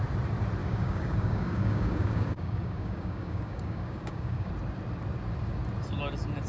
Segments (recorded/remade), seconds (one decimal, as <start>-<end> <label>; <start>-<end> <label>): 0.0-0.6 recorded; 0.6-4.5 remade; 4.5-6.5 recorded